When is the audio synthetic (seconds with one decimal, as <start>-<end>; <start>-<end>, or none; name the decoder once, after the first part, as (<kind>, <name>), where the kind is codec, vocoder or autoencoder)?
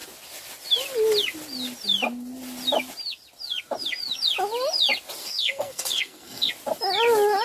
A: 5.2-6.5 (codec, SNAC)